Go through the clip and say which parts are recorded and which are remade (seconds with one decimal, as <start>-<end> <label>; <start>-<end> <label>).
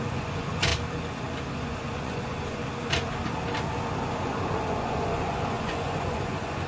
0.0-0.7 remade; 0.7-1.5 recorded; 1.5-2.6 remade; 2.6-4.1 recorded; 4.1-6.7 remade